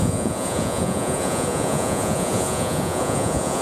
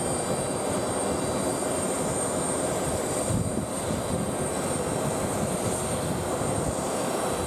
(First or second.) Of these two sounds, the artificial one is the first